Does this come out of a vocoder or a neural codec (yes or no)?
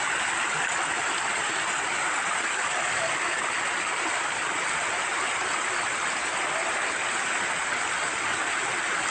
no